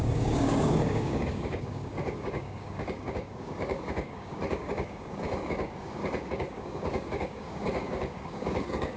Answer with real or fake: fake